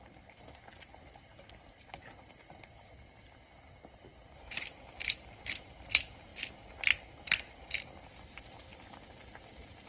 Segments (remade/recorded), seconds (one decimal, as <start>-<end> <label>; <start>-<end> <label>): 0.0-1.3 remade; 1.3-1.8 recorded; 1.8-6.3 remade; 6.3-7.2 recorded; 7.2-8.7 remade; 8.7-9.4 recorded; 9.4-9.9 remade